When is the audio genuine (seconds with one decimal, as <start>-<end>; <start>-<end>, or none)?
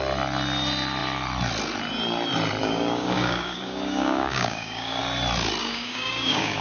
0.0-2.6; 5.0-5.6